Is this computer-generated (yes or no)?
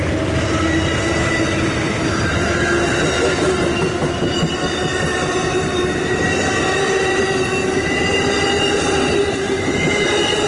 no